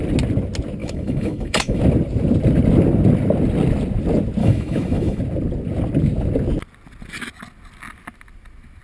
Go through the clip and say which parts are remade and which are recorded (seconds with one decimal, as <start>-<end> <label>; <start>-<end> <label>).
0.0-0.8 recorded; 0.8-1.8 remade; 1.8-4.4 recorded; 4.4-5.2 remade; 5.2-8.8 recorded